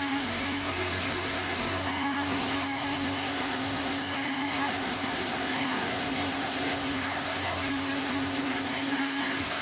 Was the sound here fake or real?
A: fake